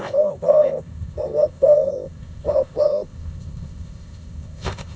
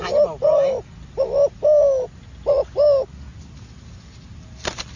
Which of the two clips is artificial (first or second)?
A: first